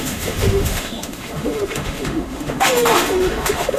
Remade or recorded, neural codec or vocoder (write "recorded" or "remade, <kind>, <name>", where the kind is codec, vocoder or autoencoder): remade, autoencoder, DAC-VAE